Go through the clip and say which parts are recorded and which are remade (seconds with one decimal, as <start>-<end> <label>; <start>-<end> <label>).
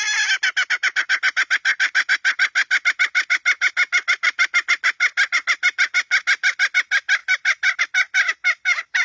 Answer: 0.0-7.2 recorded; 7.2-7.9 remade; 7.9-9.0 recorded